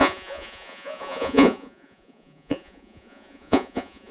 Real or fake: fake